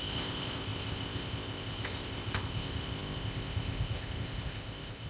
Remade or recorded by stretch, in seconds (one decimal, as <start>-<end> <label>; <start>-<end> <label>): 0.0-5.1 remade